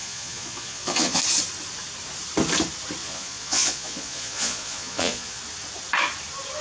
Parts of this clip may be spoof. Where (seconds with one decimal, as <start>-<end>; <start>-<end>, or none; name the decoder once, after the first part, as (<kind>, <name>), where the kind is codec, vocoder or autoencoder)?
0.0-1.2 (vocoder, Vocos); 3.0-5.4